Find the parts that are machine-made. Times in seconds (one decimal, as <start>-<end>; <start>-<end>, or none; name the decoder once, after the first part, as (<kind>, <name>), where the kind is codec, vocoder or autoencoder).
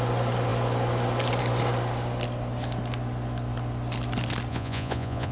4.5-5.3 (vocoder, Vocos)